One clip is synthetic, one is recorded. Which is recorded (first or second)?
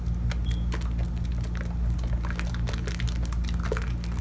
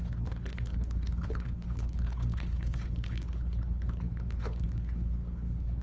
first